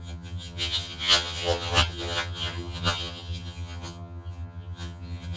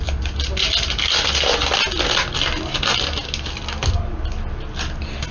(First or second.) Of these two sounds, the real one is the second